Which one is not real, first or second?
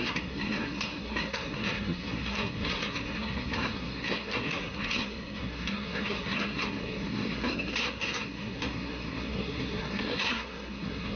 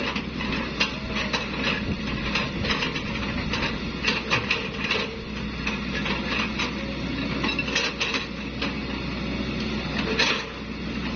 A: first